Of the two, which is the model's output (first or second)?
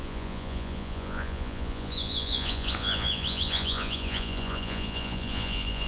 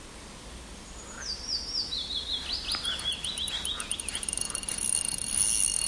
first